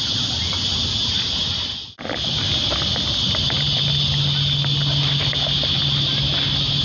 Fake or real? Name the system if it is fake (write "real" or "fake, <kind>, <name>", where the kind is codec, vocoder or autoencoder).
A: real